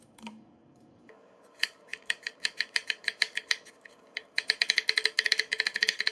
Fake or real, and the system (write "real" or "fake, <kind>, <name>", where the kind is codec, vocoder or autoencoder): fake, codec, DAC